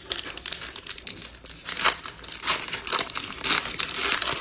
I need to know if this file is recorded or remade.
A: recorded